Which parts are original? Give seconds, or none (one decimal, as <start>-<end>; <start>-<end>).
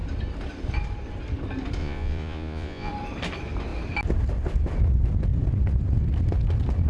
0.0-1.8; 2.9-6.9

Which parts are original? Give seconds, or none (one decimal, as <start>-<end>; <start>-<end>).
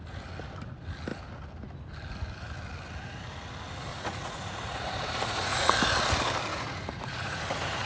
0.0-3.9; 5.7-6.5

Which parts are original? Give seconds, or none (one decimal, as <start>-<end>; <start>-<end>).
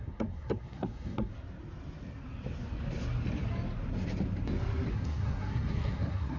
1.3-4.9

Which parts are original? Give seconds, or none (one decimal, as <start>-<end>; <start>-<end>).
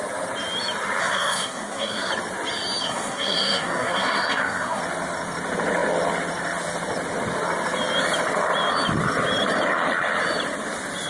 0.0-1.0; 2.1-2.8; 4.8-11.1